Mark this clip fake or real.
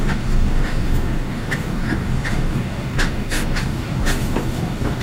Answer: fake